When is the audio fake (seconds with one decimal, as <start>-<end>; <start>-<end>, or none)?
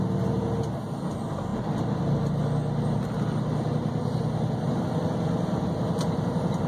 none